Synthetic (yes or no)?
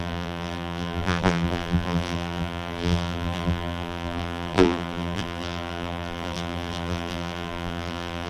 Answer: yes